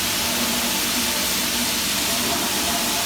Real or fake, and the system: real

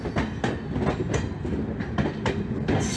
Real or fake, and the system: fake, vocoder, BigVGAN v2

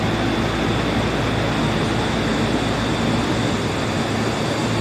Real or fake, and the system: real